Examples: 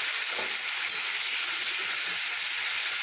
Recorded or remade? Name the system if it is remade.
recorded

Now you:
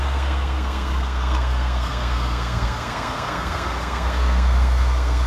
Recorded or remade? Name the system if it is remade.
remade, codec, SNAC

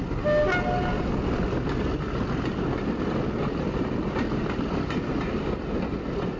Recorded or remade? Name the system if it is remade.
recorded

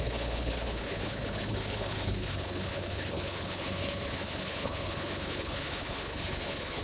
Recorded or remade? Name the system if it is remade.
remade, codec, HILCodec